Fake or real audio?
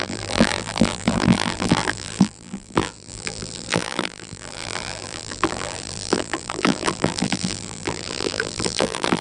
fake